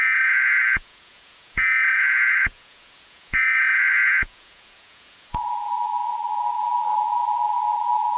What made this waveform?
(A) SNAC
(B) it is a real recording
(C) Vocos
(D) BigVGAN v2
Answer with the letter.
C